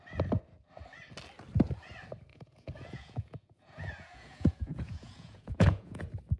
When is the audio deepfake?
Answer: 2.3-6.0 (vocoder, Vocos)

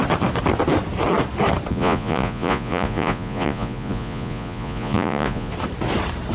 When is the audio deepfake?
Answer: 1.7-5.5 (vocoder, Vocos)

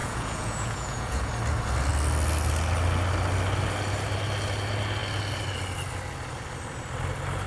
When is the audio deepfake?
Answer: 0.0-1.3 (vocoder, Vocos)

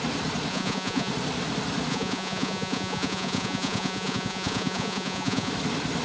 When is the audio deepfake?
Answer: 0.5-1.1 (vocoder, Vocos); 1.9-5.5

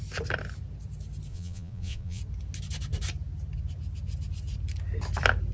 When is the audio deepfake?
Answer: 1.3-2.2 (vocoder, Vocos)

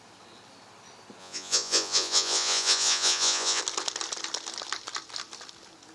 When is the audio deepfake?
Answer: 1.2-3.6 (vocoder, Vocos)

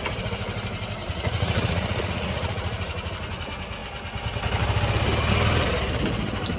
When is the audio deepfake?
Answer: 1.0-3.1 (vocoder, Vocos)